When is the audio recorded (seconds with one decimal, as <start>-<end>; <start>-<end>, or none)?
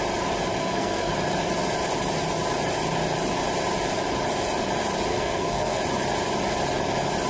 0.0-0.6; 1.1-5.1; 5.8-7.3